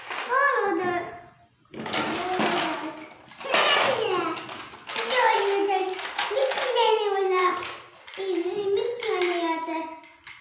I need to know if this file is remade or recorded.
recorded